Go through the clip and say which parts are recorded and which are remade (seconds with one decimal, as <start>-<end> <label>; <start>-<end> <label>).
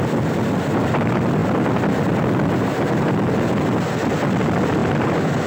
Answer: 0.0-4.8 recorded; 4.8-5.5 remade